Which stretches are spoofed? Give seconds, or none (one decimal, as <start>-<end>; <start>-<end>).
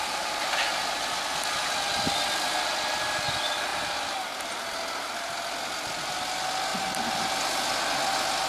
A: none